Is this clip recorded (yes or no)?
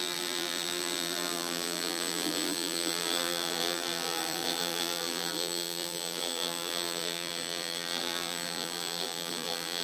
no